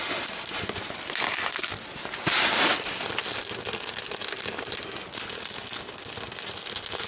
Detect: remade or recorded recorded